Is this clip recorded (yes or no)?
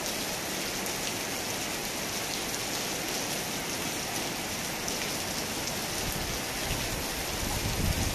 yes